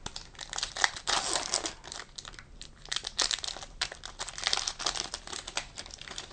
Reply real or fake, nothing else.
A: real